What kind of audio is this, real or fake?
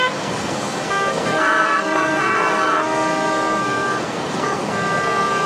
fake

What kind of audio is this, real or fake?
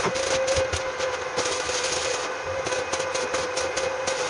real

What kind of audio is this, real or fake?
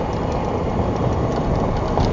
real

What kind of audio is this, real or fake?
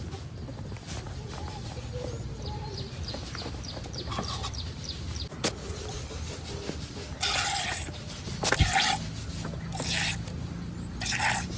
real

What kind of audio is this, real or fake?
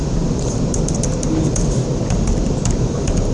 fake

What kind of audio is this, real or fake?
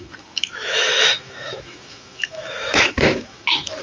fake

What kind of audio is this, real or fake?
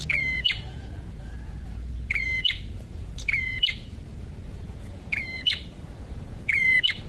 fake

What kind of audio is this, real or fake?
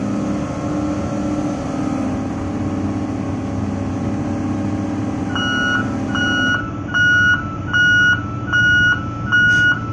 real